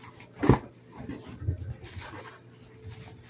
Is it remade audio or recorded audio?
recorded